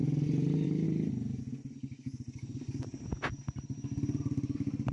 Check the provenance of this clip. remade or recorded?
recorded